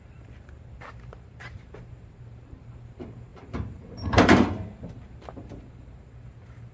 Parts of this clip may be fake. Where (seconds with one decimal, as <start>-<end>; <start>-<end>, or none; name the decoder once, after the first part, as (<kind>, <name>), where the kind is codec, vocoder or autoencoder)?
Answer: 0.0-6.7 (vocoder, BigVGAN v2)